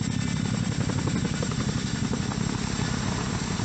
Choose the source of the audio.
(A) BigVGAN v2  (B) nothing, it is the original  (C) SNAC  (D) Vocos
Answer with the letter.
B